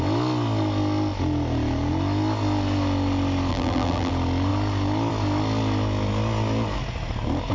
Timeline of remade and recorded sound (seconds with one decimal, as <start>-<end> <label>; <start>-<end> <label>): 0.0-3.5 recorded; 3.5-4.1 remade; 4.1-7.5 recorded